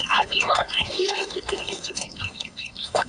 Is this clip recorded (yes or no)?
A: no